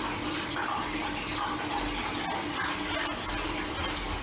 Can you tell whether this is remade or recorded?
recorded